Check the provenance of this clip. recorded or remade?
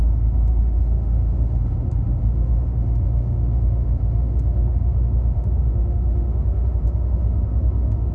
remade